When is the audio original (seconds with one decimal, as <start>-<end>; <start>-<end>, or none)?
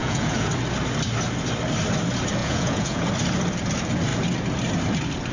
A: 0.5-2.4; 3.1-5.3